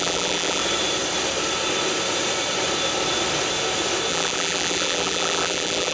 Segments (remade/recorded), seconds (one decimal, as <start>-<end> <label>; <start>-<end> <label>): 0.0-0.6 remade; 0.6-4.1 recorded; 4.1-5.9 remade